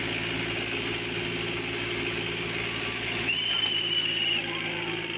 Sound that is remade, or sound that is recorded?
recorded